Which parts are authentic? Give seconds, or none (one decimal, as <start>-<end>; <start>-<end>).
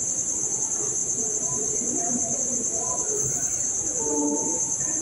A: 0.0-1.0; 4.0-5.0